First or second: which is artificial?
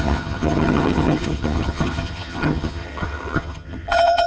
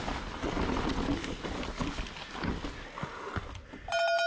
first